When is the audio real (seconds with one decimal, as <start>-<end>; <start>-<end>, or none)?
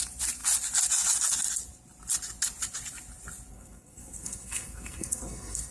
0.0-3.5